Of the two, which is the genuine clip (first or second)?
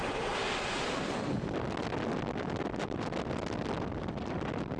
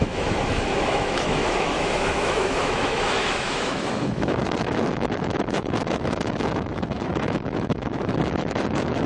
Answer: first